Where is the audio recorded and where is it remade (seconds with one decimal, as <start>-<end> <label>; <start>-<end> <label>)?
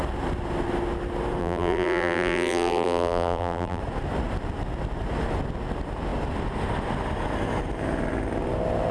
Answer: 0.0-1.4 recorded; 1.4-3.8 remade; 3.8-8.9 recorded